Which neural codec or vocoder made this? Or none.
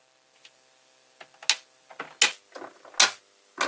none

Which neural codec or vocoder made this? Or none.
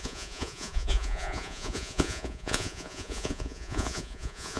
vocoder, Vocos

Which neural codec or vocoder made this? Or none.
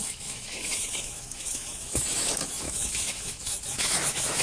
autoencoder, DAC-VAE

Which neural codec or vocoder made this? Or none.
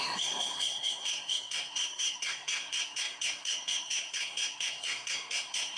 codec, SNAC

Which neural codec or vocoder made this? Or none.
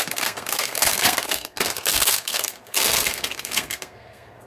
codec, SNAC